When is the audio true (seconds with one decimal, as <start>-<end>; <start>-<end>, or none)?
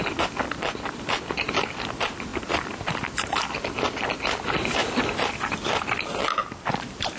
6.2-6.8